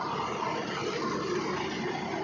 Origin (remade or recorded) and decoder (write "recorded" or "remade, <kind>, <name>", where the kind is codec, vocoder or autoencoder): recorded